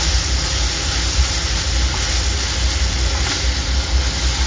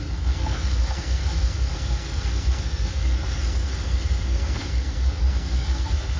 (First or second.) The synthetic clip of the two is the second